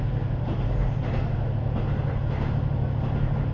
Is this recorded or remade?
recorded